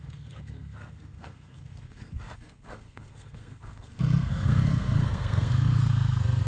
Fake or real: fake